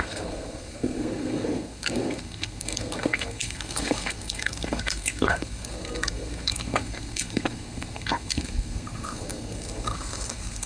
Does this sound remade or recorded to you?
remade